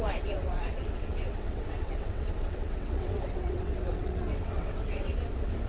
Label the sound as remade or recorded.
remade